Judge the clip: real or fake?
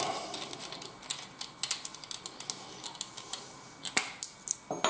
real